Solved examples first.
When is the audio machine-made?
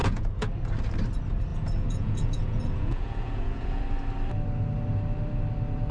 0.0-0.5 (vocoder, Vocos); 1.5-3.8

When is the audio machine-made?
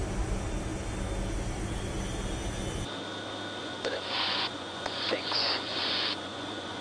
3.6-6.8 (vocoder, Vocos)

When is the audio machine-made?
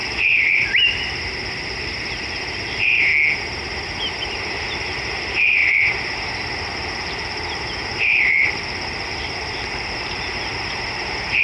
0.0-3.1 (vocoder, BigVGAN v2); 4.4-11.4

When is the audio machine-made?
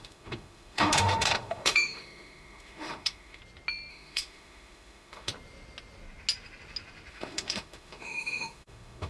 0.0-3.4 (autoencoder, DAC-VAE); 3.9-5.3; 7.1-9.1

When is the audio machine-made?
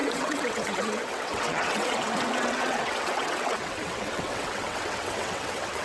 0.0-5.8 (vocoder, WaveNeXt)